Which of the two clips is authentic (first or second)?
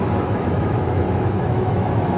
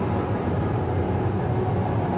second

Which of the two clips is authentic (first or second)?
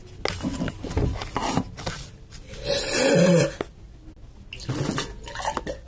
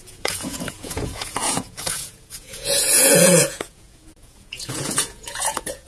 first